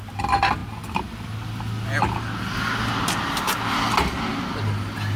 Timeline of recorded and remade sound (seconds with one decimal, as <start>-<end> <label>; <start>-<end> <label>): 0.0-5.2 recorded